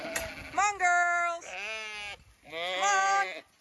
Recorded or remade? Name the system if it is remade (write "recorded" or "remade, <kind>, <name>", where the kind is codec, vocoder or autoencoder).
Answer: recorded